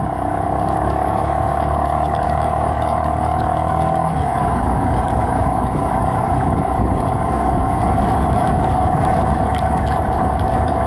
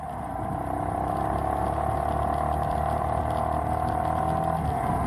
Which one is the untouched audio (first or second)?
second